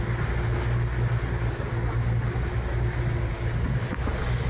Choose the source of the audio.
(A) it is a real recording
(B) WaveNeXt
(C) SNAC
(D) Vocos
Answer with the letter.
A